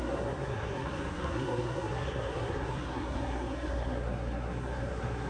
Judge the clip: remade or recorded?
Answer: remade